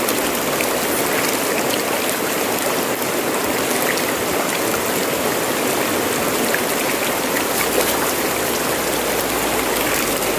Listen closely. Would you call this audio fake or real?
real